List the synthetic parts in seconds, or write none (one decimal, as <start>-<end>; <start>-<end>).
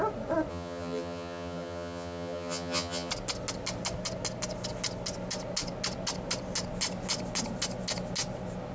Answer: 0.5-3.1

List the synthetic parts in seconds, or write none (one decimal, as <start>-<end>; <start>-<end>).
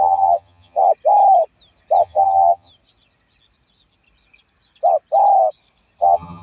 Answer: 0.0-0.8; 2.0-2.7; 6.0-6.4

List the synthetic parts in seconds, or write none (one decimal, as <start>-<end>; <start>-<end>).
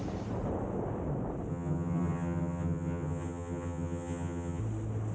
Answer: 1.5-4.6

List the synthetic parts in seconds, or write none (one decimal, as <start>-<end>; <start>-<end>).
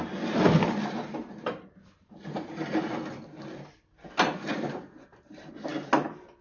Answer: none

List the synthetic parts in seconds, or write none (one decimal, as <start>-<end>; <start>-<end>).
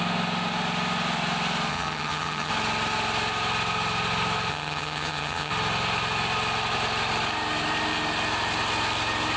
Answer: 1.7-2.5; 4.5-5.5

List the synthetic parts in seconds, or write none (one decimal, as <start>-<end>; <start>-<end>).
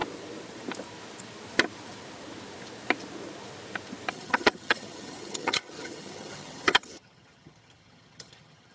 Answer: 4.1-8.7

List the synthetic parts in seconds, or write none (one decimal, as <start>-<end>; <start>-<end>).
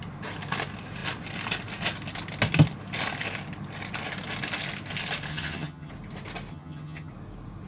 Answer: 5.3-5.9; 6.5-7.1